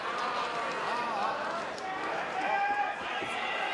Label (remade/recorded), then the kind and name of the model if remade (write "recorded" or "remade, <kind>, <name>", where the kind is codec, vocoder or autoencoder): recorded